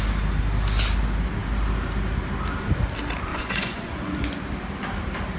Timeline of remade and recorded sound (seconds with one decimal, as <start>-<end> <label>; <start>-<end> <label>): 0.0-3.3 recorded; 3.3-4.4 remade; 4.4-5.4 recorded